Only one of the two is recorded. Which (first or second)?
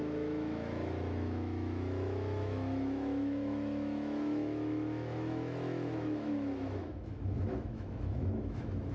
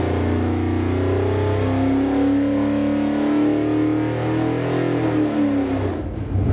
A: second